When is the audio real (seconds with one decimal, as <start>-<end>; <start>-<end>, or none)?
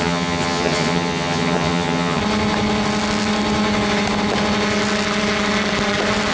2.2-6.3